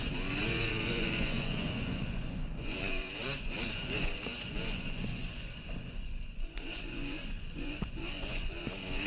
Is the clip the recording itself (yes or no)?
no